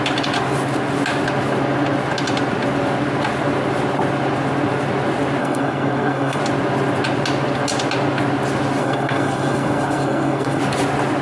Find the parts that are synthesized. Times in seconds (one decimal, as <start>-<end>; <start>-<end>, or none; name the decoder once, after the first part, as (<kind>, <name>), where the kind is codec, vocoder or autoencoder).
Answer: 5.4-6.4 (codec, SNAC); 8.8-10.6